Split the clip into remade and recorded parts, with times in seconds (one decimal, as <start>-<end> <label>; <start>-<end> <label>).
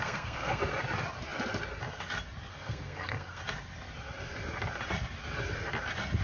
0.0-0.6 remade; 0.6-2.5 recorded; 2.5-3.4 remade; 3.4-6.2 recorded